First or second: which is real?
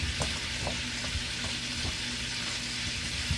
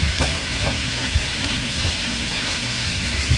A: first